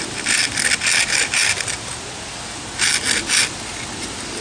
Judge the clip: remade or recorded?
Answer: recorded